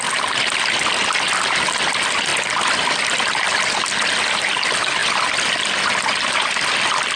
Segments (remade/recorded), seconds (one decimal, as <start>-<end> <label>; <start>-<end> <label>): 0.0-7.2 recorded